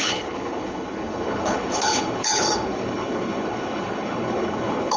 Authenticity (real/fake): fake